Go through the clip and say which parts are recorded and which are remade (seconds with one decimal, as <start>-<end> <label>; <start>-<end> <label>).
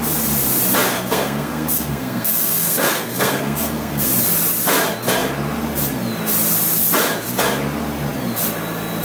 0.0-0.9 recorded; 0.9-4.1 remade; 4.1-9.0 recorded